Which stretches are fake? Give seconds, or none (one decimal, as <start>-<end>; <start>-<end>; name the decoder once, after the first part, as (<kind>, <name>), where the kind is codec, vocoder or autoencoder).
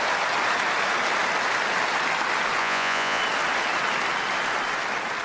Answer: 2.6-3.2 (vocoder, Vocos)